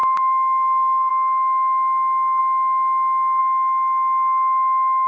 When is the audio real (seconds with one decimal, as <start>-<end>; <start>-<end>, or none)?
1.1-5.1